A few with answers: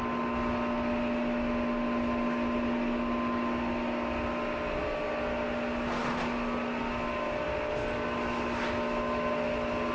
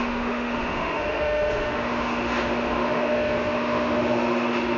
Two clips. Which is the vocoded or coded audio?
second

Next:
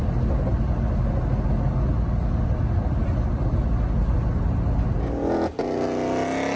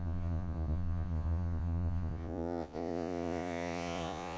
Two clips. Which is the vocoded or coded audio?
second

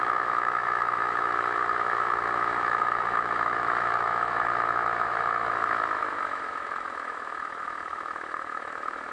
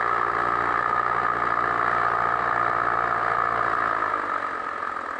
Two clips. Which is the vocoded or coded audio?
first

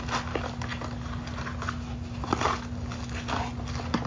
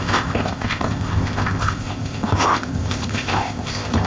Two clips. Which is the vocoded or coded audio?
second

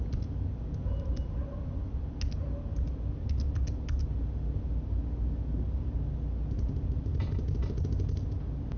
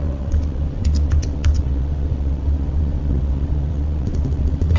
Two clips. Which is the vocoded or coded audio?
second